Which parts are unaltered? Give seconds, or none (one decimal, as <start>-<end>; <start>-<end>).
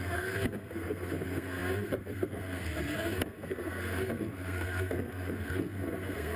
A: none